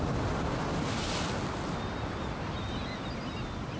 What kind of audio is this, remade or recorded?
recorded